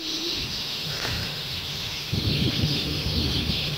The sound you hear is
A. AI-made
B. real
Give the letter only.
A